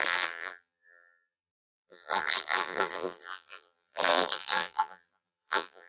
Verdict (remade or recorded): remade